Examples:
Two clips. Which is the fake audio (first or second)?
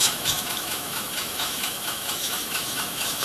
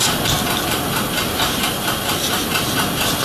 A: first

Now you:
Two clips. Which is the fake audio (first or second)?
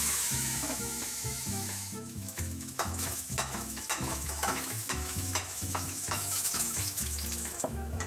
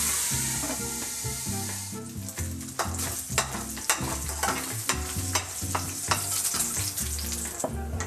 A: first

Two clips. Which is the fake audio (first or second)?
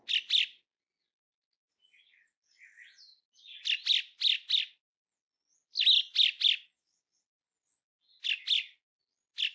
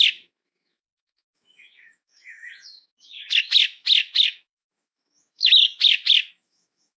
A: second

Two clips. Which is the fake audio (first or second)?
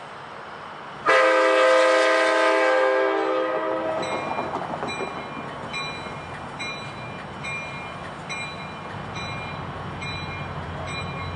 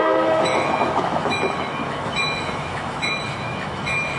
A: second